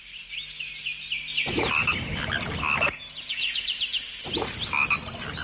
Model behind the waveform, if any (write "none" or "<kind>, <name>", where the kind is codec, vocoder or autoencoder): none